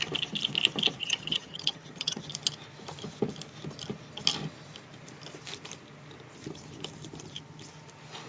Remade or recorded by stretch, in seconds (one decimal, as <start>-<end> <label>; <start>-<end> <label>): 0.0-1.0 recorded; 1.0-2.3 remade; 2.3-8.3 recorded